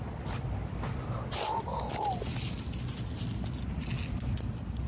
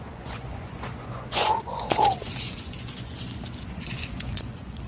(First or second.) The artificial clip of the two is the second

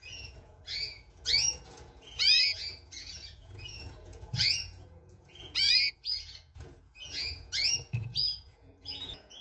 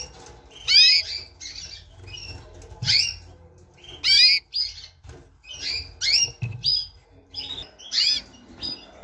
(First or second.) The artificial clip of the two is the first